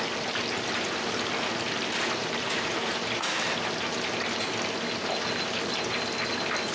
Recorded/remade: recorded